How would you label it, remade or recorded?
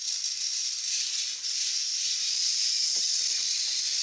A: remade